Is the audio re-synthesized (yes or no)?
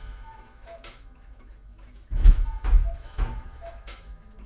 yes